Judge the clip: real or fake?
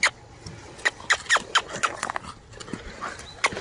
real